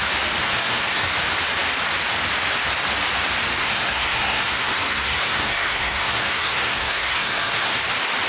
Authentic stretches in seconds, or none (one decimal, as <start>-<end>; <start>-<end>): 0.0-0.4; 1.1-3.6; 7.8-8.3